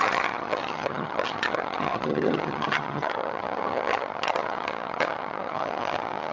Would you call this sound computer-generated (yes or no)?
yes